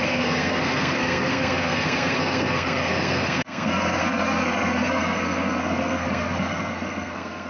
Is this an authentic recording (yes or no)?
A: no